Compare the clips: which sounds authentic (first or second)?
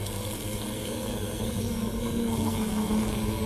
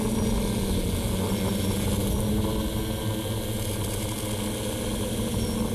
second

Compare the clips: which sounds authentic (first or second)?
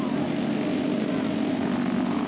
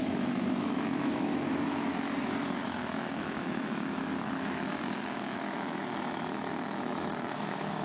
first